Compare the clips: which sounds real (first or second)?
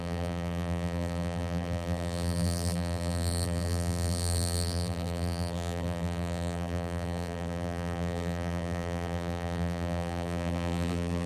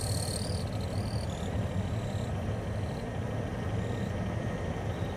second